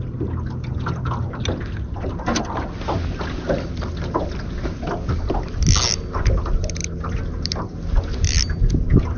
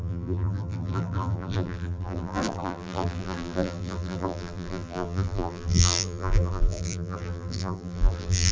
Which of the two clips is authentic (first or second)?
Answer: first